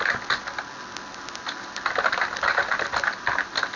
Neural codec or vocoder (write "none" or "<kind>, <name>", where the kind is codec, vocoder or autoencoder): none